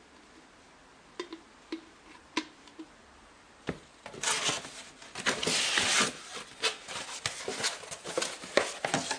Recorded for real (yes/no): yes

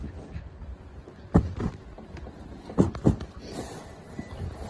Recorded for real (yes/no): yes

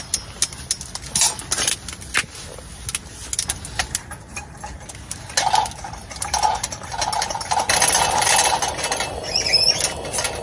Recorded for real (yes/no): yes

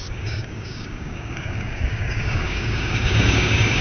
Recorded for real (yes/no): no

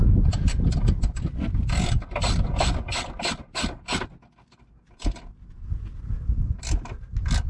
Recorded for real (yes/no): yes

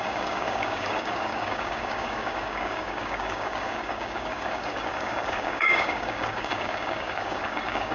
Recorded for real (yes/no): no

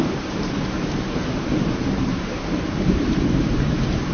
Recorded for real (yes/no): no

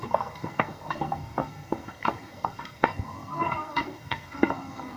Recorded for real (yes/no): no